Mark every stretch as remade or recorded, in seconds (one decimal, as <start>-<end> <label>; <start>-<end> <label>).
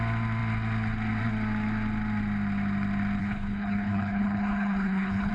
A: 0.0-3.2 recorded; 3.2-5.3 remade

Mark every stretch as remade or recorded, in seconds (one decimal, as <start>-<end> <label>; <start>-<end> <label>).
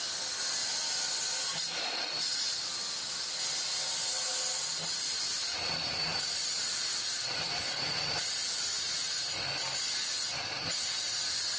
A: 0.0-11.6 recorded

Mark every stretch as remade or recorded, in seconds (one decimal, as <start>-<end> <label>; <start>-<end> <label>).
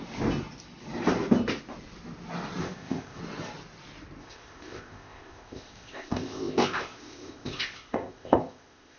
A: 0.0-2.6 recorded; 2.6-3.2 remade; 3.2-4.2 recorded; 4.2-9.0 remade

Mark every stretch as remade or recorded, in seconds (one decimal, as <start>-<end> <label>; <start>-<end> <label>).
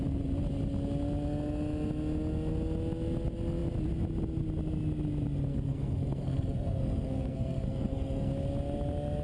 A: 0.0-5.5 recorded; 5.5-8.3 remade; 8.3-9.2 recorded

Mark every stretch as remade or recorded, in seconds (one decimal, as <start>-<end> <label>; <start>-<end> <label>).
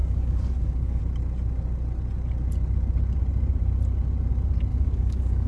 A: 0.0-1.0 remade; 1.0-4.7 recorded; 4.7-5.5 remade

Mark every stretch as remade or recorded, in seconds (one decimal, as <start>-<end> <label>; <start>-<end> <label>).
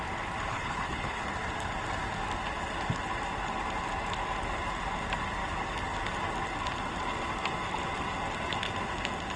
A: 0.0-0.5 recorded; 0.5-1.2 remade; 1.2-9.4 recorded